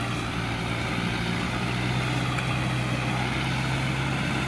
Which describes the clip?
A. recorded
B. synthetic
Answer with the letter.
A